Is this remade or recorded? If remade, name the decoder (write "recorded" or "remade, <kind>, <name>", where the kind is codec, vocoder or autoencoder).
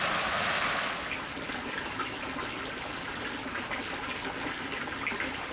recorded